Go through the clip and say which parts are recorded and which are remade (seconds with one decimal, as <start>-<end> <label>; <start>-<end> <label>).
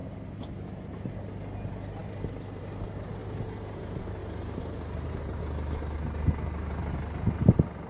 0.0-0.5 remade; 0.5-3.2 recorded; 3.2-3.8 remade; 3.8-4.2 recorded; 4.2-5.4 remade; 5.4-7.9 recorded